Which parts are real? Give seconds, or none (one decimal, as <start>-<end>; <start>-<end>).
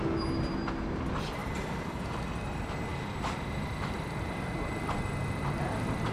0.0-1.4; 2.1-6.1